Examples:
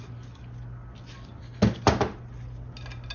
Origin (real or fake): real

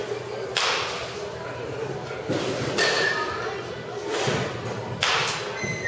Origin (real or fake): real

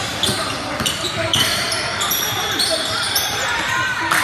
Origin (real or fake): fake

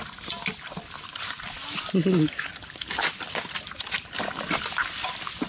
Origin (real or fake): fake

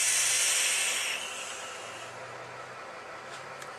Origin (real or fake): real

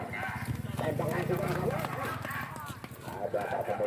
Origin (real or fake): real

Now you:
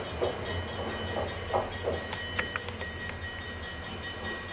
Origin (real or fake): real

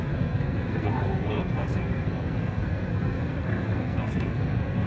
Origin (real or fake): fake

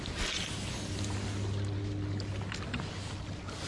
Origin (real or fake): real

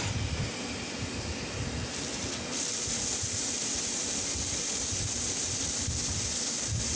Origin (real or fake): fake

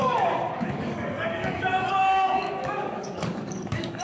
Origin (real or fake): fake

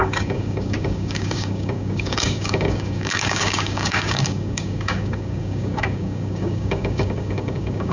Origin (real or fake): fake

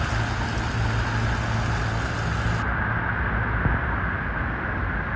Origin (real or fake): real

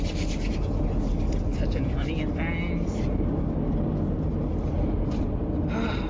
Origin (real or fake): real